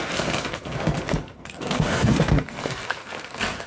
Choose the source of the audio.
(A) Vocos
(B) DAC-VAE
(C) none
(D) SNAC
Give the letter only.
D